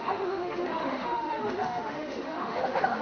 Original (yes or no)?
no